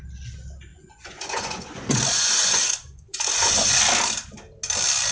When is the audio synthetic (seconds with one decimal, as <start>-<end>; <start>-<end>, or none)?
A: 0.7-3.8